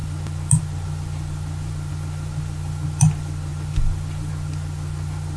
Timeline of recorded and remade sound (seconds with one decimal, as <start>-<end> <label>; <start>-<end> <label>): 0.0-5.4 recorded

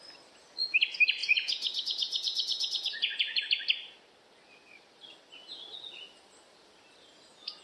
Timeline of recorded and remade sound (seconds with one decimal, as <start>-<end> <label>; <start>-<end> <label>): 0.0-1.2 recorded; 1.2-3.4 remade; 3.4-7.6 recorded

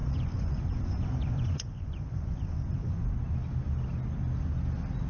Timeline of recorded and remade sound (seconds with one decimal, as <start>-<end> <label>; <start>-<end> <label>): 0.0-3.1 remade; 3.1-5.1 recorded

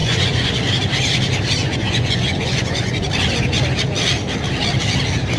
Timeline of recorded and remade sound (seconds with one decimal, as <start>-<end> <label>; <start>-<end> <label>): 0.0-0.5 remade; 0.5-1.6 recorded; 1.6-3.1 remade; 3.1-5.4 recorded

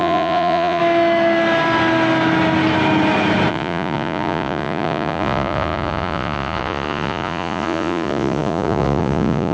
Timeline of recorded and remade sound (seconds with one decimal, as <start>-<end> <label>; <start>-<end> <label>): 0.0-0.8 remade; 0.8-3.5 recorded; 3.5-9.5 remade

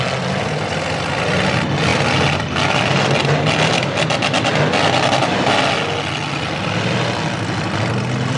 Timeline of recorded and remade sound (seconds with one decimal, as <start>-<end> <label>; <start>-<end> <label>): 0.0-8.4 recorded

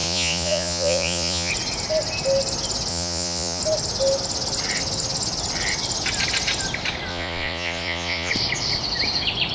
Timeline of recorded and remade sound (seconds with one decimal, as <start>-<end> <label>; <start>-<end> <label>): 0.0-1.5 remade; 1.5-2.9 recorded; 2.9-3.6 remade; 3.6-7.1 recorded; 7.1-8.3 remade; 8.3-9.5 recorded

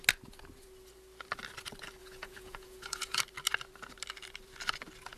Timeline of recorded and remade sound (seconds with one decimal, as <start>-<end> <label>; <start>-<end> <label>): 0.0-2.0 recorded; 2.0-3.2 remade; 3.2-5.2 recorded